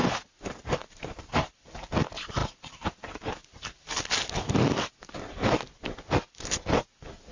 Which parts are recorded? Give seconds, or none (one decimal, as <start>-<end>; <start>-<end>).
0.0-7.3